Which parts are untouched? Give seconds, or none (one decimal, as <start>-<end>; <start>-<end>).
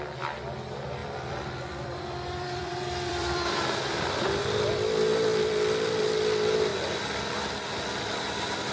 0.0-1.0; 4.4-6.7; 7.5-8.7